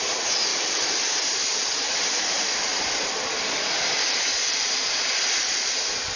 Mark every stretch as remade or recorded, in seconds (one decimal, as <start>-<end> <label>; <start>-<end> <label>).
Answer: 0.0-0.5 recorded; 0.5-3.1 remade; 3.1-6.2 recorded